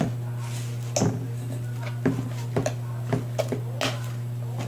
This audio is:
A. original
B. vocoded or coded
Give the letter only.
A